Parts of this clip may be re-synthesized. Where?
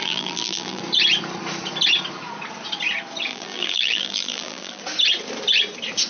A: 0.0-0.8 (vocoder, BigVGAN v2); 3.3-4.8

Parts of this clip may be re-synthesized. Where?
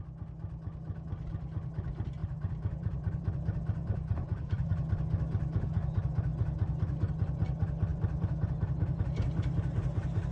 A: 2.2-4.7 (vocoder, BigVGAN v2); 7.9-9.0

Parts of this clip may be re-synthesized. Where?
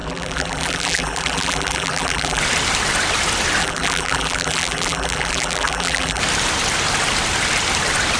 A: 0.0-2.4 (vocoder, BigVGAN v2); 3.6-6.2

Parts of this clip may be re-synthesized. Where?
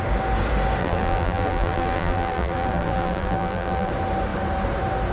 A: 0.8-3.9 (vocoder, BigVGAN v2)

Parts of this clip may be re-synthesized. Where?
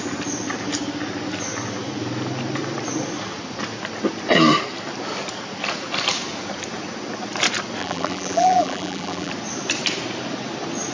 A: 7.8-9.3 (vocoder, BigVGAN v2)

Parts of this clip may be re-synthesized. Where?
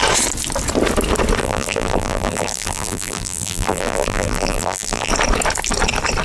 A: 1.4-5.1 (vocoder, BigVGAN v2)